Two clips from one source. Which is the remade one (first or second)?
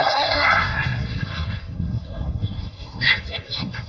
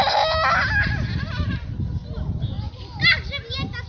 first